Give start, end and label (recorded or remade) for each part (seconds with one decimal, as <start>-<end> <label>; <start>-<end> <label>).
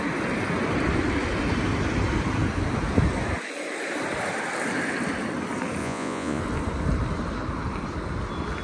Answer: 0.0-5.8 recorded; 5.8-6.4 remade; 6.4-8.6 recorded